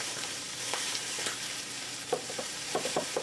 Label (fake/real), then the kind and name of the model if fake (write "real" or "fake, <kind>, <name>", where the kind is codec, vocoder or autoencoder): fake, vocoder, BigVGAN v2